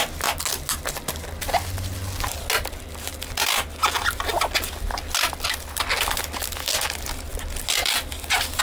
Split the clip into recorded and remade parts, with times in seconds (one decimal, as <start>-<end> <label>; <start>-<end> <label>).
0.0-8.6 recorded